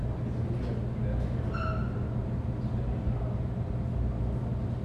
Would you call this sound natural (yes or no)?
yes